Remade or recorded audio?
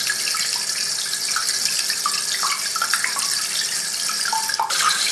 recorded